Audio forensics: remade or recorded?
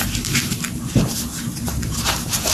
remade